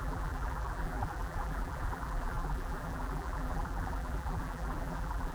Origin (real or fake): fake